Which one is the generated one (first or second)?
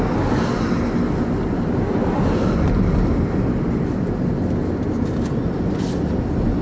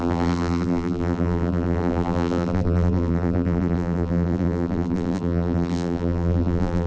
second